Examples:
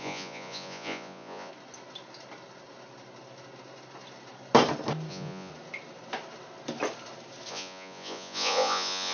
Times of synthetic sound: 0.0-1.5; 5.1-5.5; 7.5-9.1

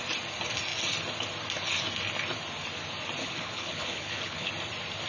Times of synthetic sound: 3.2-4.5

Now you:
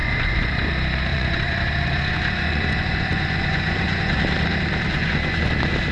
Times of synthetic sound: 0.0-0.7; 1.1-4.2; 4.9-5.5

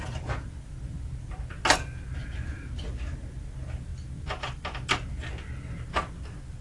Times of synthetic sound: none